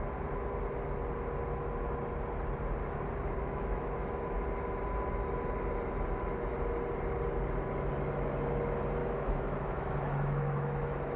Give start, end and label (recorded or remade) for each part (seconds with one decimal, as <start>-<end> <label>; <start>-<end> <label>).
0.0-3.4 recorded; 3.4-4.1 remade; 4.1-9.0 recorded; 9.0-11.2 remade